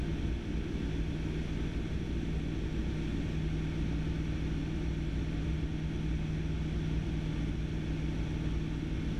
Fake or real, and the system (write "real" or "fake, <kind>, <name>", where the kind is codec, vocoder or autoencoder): real